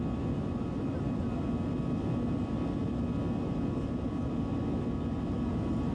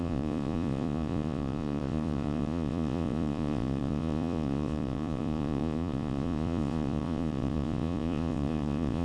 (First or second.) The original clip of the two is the first